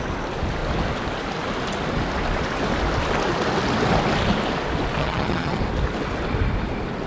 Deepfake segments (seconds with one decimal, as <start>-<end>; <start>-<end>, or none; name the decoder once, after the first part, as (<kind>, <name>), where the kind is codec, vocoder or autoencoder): 5.0-5.6 (vocoder, HiFi-GAN)